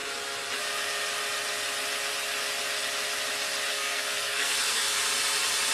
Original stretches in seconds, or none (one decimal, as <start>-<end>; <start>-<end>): 0.0-3.7; 5.0-5.7

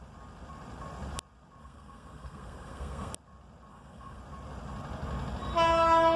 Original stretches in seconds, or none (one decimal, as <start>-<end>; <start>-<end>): 0.0-1.6; 3.1-3.7; 4.2-6.2

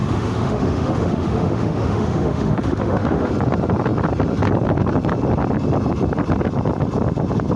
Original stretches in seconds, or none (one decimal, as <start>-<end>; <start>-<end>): 3.3-7.6